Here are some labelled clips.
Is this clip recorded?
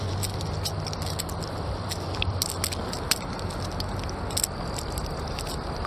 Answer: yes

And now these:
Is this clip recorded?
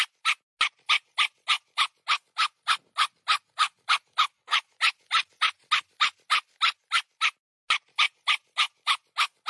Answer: yes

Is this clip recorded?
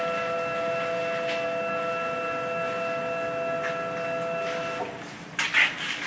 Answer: yes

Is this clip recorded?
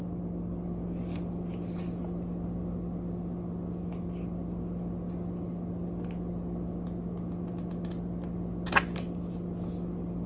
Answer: yes